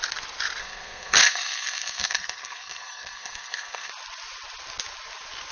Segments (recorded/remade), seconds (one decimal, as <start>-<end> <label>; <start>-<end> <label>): 0.0-0.6 recorded; 0.6-3.9 remade; 3.9-5.5 recorded